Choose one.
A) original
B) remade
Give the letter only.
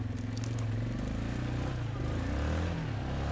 A